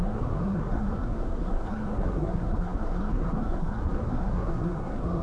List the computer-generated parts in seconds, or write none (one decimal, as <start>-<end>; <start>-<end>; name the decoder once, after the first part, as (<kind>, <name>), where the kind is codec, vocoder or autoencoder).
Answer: 0.0-5.2 (codec, SNAC)